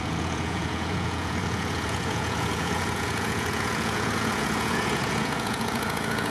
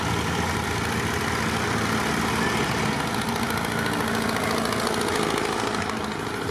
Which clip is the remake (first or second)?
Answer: first